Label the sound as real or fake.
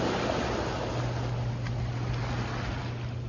real